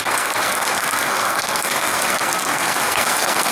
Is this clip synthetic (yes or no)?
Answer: yes